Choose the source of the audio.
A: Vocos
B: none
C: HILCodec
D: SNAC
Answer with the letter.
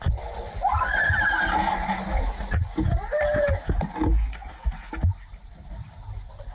B